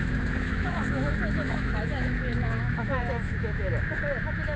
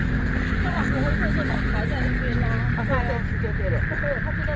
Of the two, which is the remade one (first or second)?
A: first